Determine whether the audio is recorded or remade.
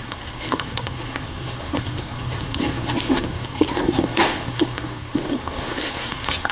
remade